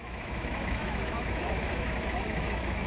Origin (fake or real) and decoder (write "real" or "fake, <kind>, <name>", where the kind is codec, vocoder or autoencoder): fake, autoencoder, DAC-VAE